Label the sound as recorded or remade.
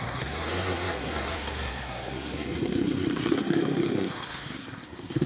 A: remade